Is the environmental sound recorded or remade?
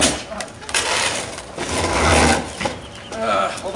recorded